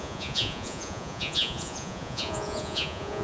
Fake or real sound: fake